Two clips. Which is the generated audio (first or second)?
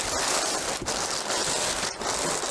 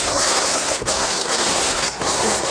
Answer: second